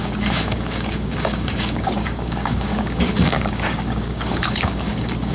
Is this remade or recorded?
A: remade